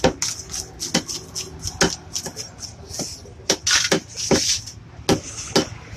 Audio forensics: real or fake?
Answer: real